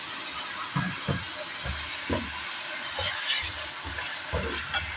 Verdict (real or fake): real